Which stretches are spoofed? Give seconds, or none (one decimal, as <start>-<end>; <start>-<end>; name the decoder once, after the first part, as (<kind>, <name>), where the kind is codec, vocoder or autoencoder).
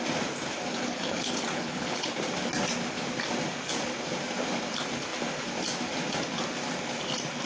0.7-2.2 (codec, HILCodec)